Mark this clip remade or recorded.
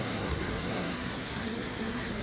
remade